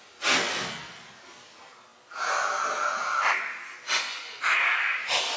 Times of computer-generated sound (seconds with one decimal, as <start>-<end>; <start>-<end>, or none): none